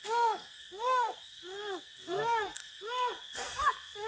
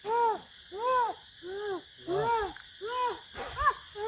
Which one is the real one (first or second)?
second